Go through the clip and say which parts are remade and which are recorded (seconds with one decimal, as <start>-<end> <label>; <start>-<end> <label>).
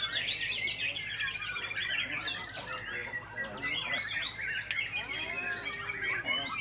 0.0-6.6 recorded